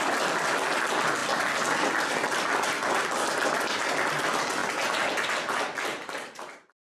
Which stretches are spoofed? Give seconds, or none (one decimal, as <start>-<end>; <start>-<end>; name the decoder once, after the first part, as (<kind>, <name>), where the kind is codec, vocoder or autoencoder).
5.9-6.8 (vocoder, BigVGAN v2)